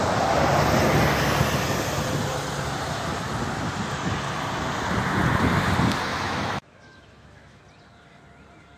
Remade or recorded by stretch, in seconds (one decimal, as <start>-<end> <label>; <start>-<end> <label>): 0.0-6.1 recorded; 6.1-7.6 remade; 7.6-8.8 recorded